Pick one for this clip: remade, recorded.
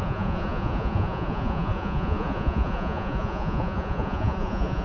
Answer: remade